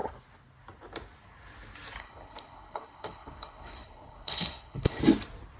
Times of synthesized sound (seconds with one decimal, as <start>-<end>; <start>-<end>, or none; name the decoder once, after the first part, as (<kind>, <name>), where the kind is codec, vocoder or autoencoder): 2.0-5.0 (codec, HILCodec)